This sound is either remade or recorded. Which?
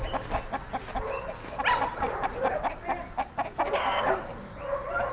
recorded